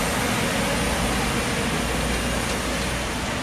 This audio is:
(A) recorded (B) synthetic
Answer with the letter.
A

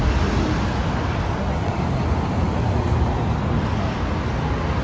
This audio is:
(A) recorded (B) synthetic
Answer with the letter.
A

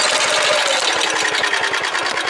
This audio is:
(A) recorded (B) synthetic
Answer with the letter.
A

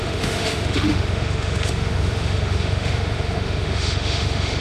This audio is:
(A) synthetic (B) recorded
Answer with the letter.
A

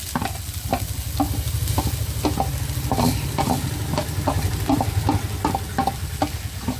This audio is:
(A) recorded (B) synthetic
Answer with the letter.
A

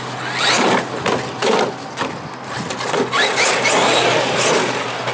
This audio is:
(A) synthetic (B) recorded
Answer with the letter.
B